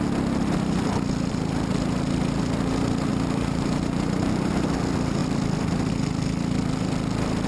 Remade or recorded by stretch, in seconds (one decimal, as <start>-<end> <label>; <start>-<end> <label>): 0.0-3.1 recorded; 3.1-4.5 remade; 4.5-7.5 recorded